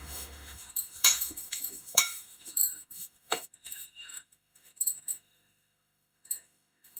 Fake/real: fake